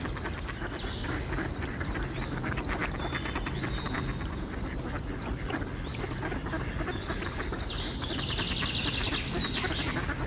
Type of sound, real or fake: real